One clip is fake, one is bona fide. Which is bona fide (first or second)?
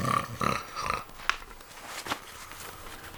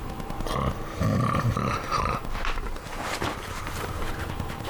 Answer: first